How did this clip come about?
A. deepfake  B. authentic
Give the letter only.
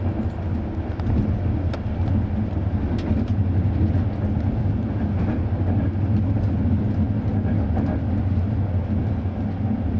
B